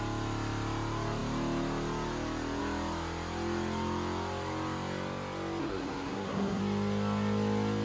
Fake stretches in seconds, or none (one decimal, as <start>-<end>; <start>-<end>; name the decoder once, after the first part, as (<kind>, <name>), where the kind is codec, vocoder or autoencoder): 5.6-6.6 (codec, SNAC)